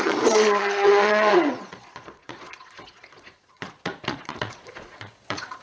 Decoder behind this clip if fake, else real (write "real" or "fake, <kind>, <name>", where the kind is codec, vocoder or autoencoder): fake, vocoder, Vocos